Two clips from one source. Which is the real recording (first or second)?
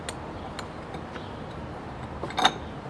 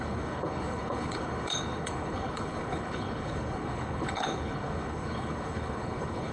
first